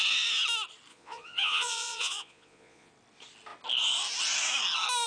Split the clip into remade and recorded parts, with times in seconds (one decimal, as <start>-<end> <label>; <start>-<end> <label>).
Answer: 0.0-0.9 recorded; 0.9-2.9 remade; 2.9-5.1 recorded

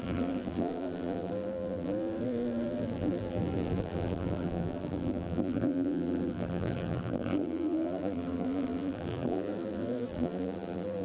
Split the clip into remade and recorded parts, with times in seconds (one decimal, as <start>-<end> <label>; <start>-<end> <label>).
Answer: 0.0-11.0 remade

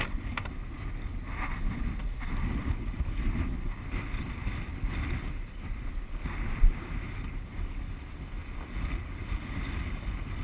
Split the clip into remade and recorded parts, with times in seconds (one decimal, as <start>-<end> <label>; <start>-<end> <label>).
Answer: 0.0-10.4 recorded